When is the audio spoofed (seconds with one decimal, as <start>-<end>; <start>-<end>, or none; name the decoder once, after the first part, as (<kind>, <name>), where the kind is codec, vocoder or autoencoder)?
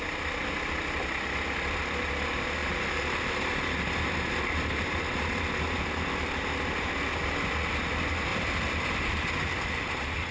8.3-9.0 (vocoder, BigVGAN v2)